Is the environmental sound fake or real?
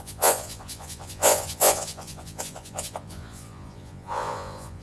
fake